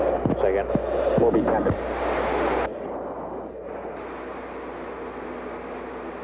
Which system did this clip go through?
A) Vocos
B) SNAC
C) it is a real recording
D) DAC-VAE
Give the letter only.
C